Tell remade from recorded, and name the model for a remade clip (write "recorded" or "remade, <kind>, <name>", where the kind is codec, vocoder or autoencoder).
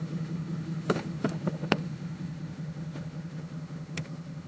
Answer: remade, autoencoder, DAC-VAE